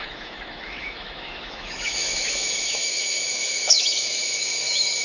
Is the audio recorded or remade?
remade